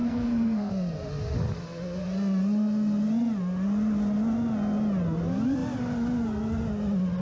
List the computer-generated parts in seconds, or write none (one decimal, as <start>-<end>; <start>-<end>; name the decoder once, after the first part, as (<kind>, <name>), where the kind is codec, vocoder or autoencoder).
0.0-0.7 (codec, SNAC)